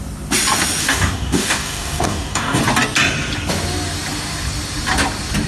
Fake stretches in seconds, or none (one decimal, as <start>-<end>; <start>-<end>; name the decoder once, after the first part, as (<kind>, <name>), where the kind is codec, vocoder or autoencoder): 0.8-2.6 (codec, DAC)